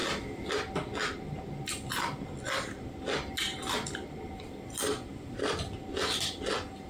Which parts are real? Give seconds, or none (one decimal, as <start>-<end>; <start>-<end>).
0.5-3.5; 5.2-6.9